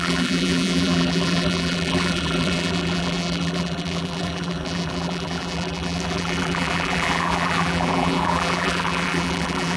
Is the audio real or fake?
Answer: fake